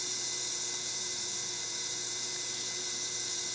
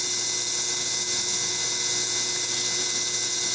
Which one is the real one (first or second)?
second